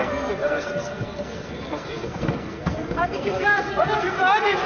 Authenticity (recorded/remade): remade